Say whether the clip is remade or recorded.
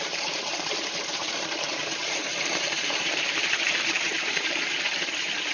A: remade